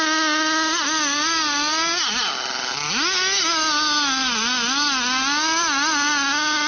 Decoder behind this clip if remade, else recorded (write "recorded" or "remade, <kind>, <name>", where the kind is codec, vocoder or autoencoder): recorded